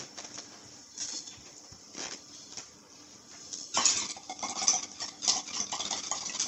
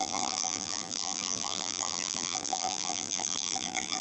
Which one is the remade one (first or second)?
second